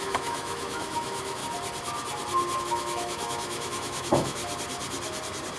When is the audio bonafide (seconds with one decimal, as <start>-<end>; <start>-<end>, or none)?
1.4-2.6; 4.4-5.6